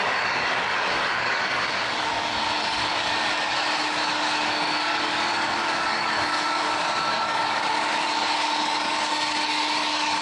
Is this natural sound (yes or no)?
no